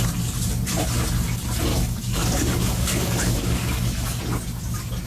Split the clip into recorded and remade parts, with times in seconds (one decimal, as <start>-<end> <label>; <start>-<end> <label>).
0.0-1.7 recorded; 1.7-4.2 remade; 4.2-5.1 recorded